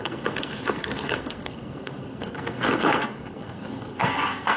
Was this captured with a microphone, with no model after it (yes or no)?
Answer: no